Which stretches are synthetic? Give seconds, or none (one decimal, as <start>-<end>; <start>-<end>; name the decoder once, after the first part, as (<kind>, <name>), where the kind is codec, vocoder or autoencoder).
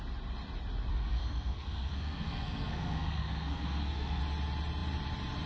0.9-4.2 (codec, SNAC)